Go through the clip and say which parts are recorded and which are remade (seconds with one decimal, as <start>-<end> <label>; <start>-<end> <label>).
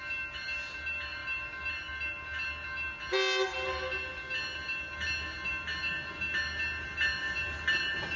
0.0-8.2 recorded